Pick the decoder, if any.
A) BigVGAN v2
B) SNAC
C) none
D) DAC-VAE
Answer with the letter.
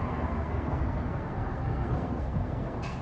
B